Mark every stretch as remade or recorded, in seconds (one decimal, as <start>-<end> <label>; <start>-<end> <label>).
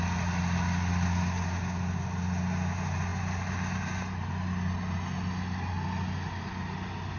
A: 0.0-7.2 recorded